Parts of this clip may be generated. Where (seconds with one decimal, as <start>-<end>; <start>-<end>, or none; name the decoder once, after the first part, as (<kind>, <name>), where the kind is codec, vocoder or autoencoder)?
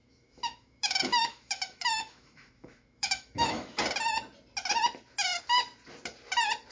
0.0-3.8 (autoencoder, DAC-VAE)